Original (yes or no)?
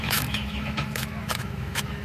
no